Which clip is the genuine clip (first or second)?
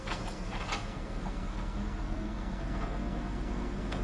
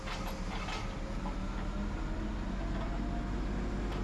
second